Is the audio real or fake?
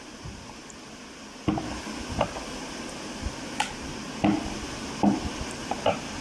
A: real